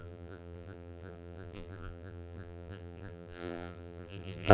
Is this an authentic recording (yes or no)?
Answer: no